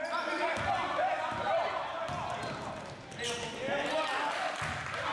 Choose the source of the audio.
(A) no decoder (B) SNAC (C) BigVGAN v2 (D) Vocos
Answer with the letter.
A